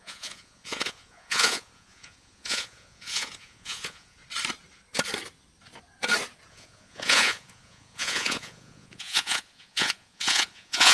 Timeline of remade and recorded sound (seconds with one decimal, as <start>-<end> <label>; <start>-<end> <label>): 0.0-4.2 remade; 4.2-6.5 recorded; 6.5-10.9 remade